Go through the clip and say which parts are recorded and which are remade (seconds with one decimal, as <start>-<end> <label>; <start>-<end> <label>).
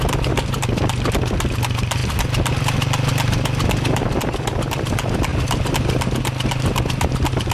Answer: 0.0-7.5 recorded